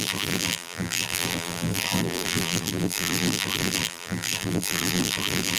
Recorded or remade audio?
remade